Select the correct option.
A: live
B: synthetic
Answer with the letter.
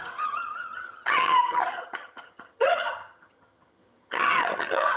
B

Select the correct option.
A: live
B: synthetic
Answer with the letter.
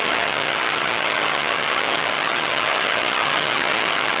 B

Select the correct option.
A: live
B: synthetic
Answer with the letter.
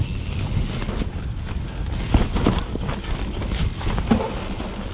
A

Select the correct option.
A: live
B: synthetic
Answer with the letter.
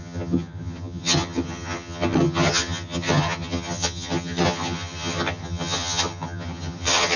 B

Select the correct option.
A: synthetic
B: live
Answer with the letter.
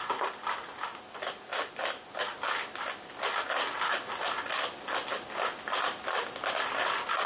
B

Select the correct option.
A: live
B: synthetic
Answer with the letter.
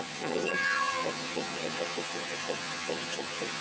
B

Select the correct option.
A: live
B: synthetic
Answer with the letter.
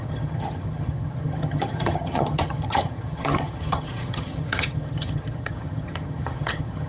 B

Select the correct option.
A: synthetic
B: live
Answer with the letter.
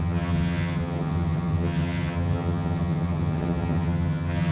A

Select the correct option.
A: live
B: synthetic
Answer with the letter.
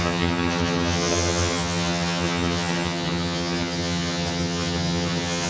B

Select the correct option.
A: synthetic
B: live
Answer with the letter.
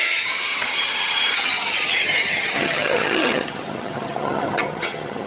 A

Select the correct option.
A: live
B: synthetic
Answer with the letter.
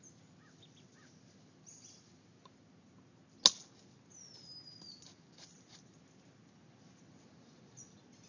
A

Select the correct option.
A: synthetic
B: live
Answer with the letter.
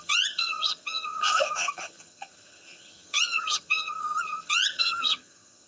A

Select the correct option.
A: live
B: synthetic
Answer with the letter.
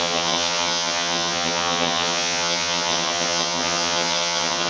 B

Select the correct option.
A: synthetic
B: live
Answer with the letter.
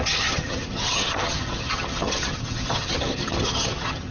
A